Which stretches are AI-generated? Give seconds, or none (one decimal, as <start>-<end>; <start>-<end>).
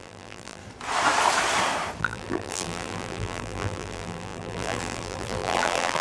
0.0-0.6; 2.0-6.0